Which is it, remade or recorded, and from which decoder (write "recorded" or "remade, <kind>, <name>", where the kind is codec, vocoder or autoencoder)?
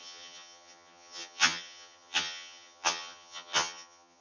remade, vocoder, HiFi-GAN